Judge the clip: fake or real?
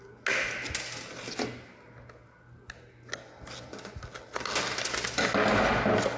real